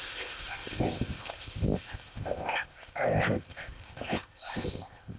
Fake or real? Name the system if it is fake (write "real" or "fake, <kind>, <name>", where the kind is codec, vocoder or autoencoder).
fake, codec, ZipCodec